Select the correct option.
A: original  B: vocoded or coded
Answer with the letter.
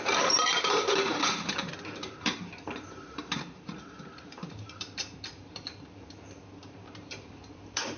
B